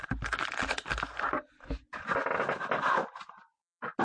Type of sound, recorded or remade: recorded